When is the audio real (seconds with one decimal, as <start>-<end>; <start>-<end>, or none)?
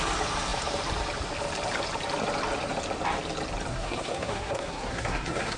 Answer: 0.0-3.7